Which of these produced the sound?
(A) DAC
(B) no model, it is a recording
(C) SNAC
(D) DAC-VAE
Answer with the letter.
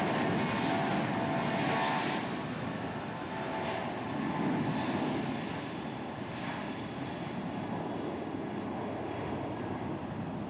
B